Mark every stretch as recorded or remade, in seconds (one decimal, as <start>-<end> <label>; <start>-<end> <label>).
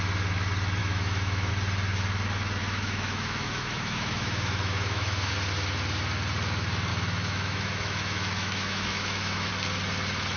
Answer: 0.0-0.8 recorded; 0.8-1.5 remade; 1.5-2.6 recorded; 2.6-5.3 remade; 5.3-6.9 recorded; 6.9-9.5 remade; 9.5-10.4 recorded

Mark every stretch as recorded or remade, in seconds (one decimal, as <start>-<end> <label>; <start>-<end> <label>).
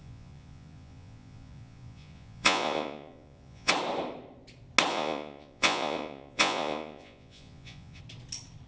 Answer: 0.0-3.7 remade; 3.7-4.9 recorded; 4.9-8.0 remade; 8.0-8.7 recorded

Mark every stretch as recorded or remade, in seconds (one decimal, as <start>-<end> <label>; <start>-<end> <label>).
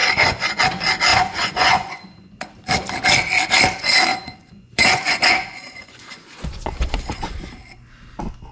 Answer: 0.0-0.6 remade; 0.6-1.1 recorded; 1.1-2.5 remade; 2.5-4.1 recorded; 4.1-7.5 remade; 7.5-8.5 recorded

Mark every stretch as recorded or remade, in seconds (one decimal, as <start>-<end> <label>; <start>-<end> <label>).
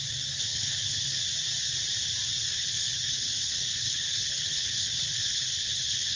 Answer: 0.0-0.5 recorded; 0.5-1.2 remade; 1.2-2.5 recorded; 2.5-6.2 remade